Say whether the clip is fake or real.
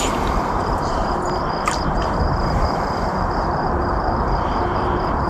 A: fake